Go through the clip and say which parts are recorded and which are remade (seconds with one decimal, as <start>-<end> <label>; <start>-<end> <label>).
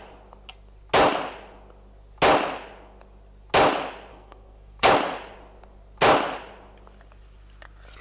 0.0-4.1 recorded; 4.1-4.9 remade; 4.9-8.0 recorded